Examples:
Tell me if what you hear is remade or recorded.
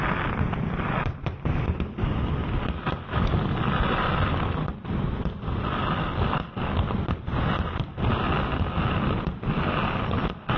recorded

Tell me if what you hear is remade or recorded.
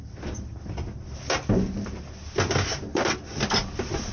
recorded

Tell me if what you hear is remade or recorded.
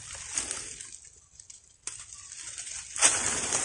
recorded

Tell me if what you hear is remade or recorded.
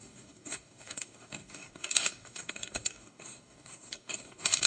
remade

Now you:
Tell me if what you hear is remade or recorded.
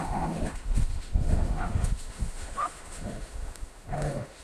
remade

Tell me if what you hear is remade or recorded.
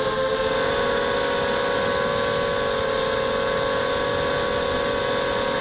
recorded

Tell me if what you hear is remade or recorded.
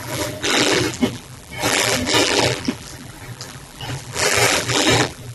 remade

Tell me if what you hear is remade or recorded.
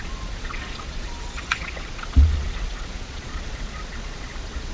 remade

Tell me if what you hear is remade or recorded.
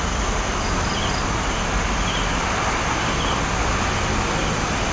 recorded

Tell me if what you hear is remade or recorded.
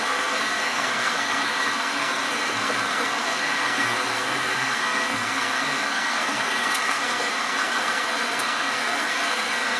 remade